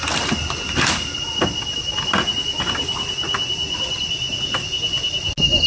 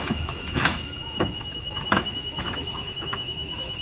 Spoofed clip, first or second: second